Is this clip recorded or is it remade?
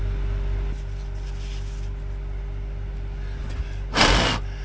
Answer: recorded